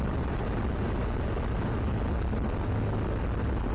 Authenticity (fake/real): real